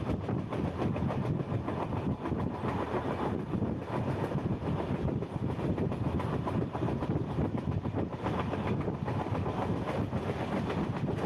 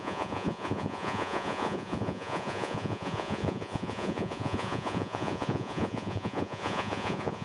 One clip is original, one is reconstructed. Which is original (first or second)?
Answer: first